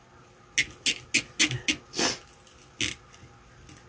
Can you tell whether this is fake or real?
real